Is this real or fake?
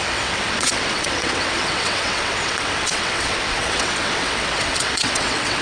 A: fake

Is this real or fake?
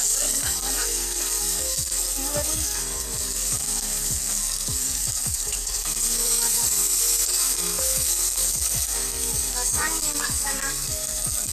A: fake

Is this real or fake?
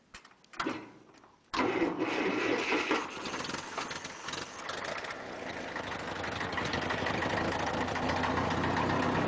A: real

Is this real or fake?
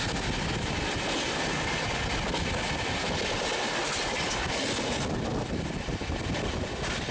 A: real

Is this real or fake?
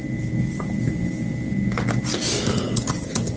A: real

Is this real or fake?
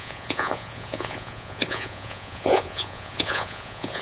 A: fake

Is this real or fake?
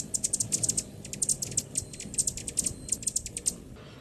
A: real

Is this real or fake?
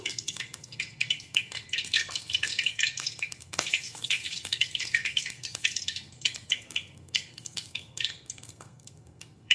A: fake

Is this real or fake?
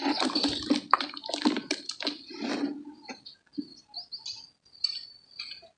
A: real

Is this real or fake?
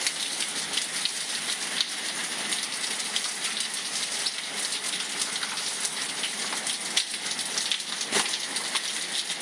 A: real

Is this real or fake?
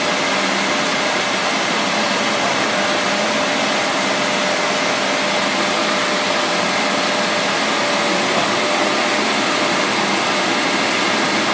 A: real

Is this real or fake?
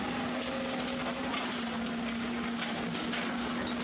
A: real